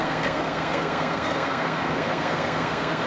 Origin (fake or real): fake